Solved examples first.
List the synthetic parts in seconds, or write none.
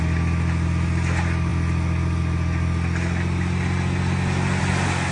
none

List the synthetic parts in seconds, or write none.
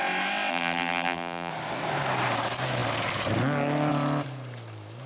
0.5-1.5 (vocoder, BigVGAN v2)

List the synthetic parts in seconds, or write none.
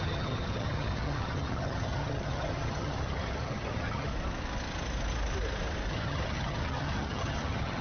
0.0-4.1 (vocoder, HiFi-GAN); 5.9-7.8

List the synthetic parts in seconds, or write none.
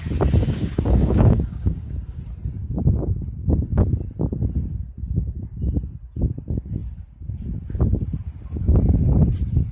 0.4-2.2 (codec, DAC)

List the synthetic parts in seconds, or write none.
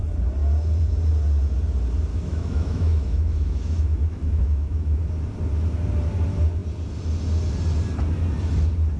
2.1-5.0 (autoencoder, DAC-VAE)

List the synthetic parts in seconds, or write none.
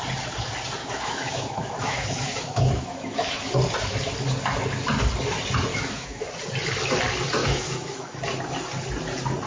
0.8-3.5 (autoencoder, DAC-VAE); 5.7-6.3; 7.4-8.3